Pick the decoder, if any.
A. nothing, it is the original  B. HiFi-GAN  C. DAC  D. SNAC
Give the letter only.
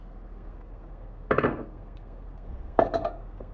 D